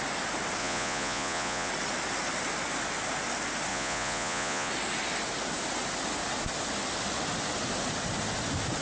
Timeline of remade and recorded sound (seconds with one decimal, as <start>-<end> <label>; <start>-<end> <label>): 0.0-0.6 recorded; 0.6-1.7 remade; 1.7-3.7 recorded; 3.7-4.7 remade; 4.7-8.8 recorded